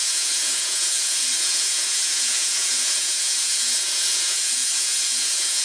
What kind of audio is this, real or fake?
fake